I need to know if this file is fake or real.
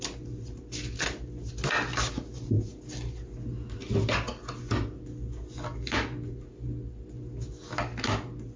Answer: real